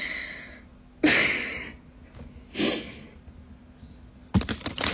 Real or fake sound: real